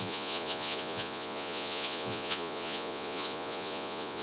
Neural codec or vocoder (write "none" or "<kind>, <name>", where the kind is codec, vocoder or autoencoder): vocoder, Vocos